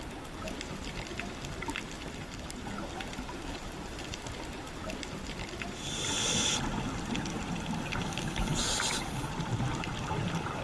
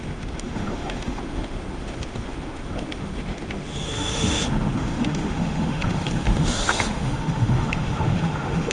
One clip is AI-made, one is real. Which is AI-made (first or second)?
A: second